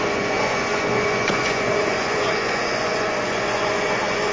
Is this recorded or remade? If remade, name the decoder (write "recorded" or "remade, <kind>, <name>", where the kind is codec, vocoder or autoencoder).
remade, vocoder, Vocos